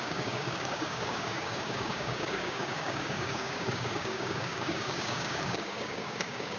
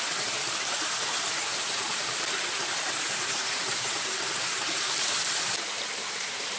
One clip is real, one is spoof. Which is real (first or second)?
second